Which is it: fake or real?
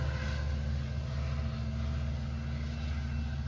real